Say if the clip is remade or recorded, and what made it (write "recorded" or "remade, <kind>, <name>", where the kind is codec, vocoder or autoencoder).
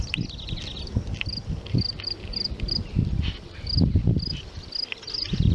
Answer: recorded